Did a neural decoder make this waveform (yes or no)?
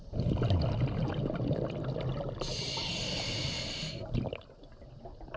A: no